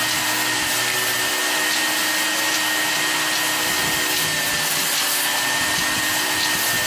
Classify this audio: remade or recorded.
recorded